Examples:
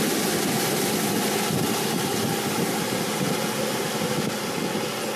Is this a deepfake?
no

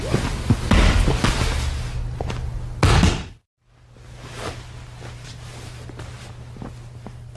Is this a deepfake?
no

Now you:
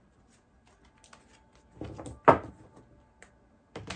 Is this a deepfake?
no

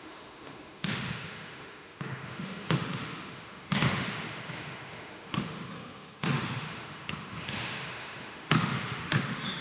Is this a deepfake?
yes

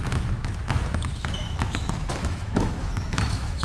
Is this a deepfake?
yes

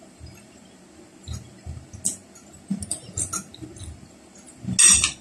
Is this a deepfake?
no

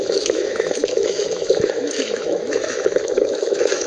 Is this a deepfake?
yes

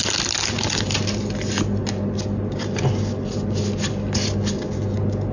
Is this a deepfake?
no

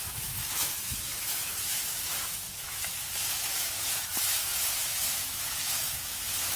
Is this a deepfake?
yes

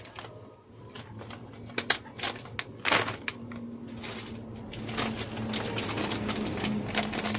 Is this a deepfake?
no